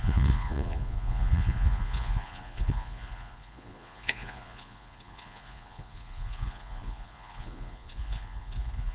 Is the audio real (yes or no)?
no